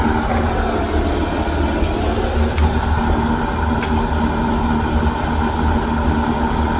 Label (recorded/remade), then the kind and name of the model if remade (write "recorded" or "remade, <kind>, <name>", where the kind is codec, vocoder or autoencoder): recorded